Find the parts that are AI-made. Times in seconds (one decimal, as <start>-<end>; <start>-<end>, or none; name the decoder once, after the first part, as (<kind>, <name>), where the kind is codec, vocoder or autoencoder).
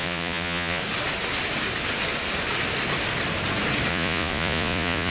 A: 0.0-0.8 (vocoder, Vocos); 3.9-5.1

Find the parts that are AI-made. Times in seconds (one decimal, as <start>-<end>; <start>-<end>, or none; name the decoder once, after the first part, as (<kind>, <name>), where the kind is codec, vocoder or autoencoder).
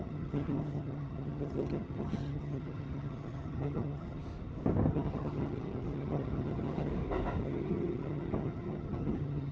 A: 0.0-4.2 (vocoder, HiFi-GAN); 4.9-6.9; 7.4-9.5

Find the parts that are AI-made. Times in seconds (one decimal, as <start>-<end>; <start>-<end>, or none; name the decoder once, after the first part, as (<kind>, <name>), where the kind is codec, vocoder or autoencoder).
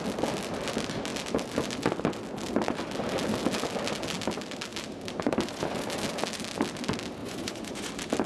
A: 7.2-7.9 (vocoder, Vocos)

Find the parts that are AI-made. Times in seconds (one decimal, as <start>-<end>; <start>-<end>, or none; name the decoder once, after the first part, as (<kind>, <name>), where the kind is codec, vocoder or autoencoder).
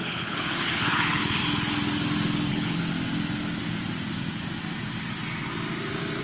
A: 0.0-1.4 (codec, HILCodec); 2.5-2.9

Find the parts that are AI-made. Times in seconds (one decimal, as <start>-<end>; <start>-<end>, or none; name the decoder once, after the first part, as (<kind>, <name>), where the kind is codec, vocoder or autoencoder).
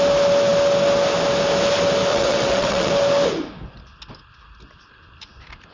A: 2.1-2.9 (vocoder, WaveNeXt)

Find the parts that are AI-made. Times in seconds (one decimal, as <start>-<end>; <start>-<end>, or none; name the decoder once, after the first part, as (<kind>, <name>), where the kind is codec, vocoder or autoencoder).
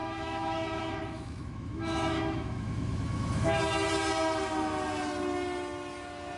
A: 0.0-3.6 (autoencoder, DAC-VAE)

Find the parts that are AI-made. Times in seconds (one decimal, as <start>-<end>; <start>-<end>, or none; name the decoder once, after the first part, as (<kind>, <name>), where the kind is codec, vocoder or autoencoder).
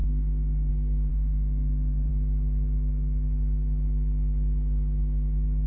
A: 0.0-0.7 (autoencoder, DAC-VAE); 1.1-2.1